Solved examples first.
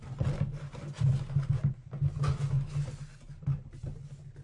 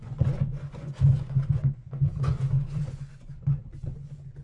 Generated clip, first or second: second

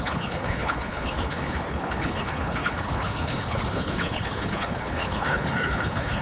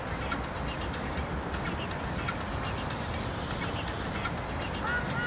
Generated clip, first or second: first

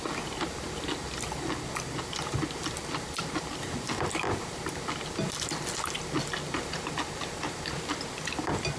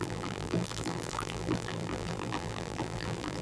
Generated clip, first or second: second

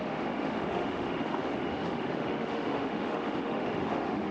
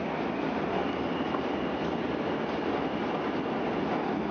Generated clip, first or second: first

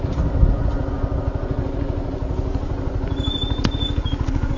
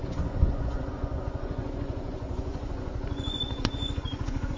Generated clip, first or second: second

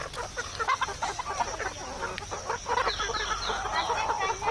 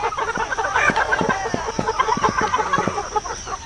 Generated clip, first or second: second